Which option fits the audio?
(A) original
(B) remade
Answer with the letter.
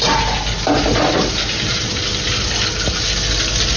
A